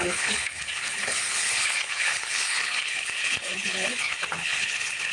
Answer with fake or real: fake